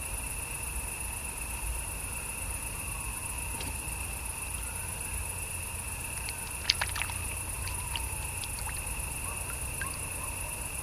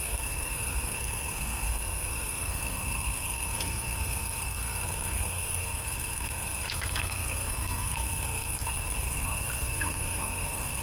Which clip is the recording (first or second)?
first